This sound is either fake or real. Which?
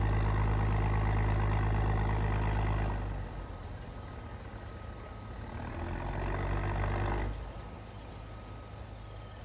real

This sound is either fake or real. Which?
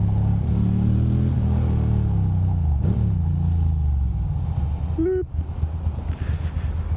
real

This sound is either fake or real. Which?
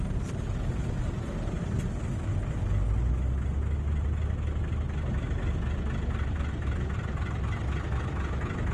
real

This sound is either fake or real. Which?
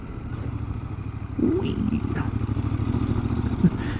real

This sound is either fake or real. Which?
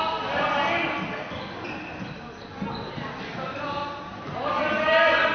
real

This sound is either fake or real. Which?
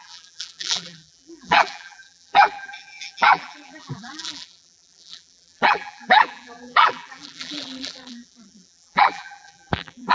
fake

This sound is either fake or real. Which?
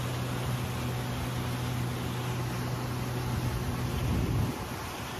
real